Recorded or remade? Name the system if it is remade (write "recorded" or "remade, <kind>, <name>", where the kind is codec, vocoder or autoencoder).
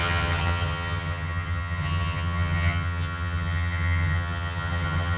remade, vocoder, HiFi-GAN